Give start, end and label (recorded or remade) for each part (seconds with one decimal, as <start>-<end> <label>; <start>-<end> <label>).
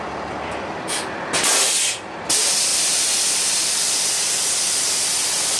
0.0-5.6 recorded